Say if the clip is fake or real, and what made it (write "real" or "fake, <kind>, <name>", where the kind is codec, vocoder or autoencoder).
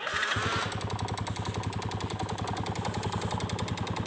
real